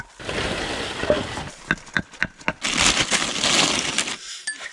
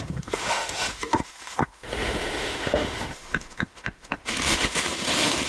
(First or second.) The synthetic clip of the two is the second